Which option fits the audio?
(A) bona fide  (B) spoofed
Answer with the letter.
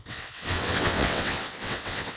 B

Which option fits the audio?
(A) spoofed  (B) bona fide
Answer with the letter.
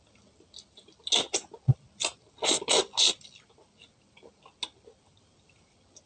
B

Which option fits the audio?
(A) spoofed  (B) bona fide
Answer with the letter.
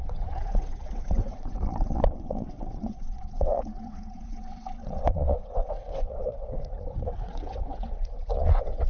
A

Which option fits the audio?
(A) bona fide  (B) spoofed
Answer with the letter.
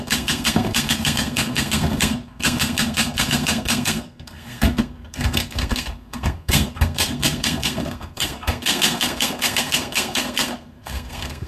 B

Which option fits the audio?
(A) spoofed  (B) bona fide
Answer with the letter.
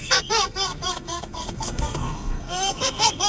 A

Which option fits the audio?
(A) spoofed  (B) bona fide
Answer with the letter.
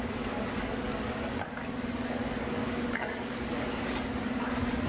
A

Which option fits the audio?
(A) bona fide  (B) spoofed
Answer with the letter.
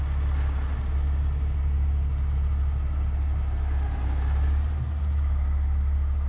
A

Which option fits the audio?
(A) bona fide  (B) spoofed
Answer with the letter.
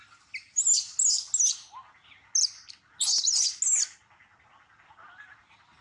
A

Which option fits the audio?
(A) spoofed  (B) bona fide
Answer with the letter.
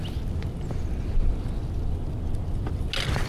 B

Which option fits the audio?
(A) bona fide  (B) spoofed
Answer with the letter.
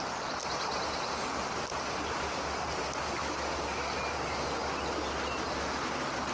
A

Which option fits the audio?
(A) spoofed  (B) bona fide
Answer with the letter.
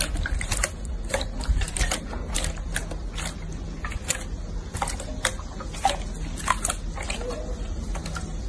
B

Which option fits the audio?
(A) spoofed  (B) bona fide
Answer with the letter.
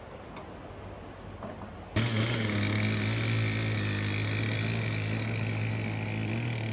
B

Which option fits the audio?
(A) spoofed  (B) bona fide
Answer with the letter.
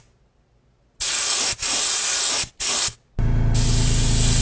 B